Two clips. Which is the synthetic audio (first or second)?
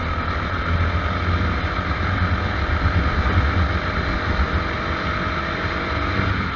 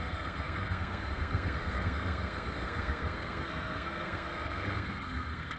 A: second